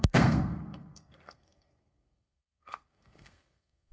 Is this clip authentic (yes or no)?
no